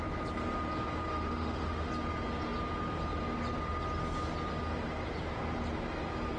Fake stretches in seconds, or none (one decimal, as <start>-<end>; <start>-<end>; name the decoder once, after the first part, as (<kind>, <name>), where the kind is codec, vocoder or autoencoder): 1.1-1.9 (autoencoder, DAC-VAE)